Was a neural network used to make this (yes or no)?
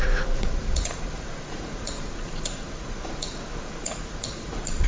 yes